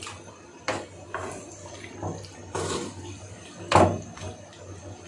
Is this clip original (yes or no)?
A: yes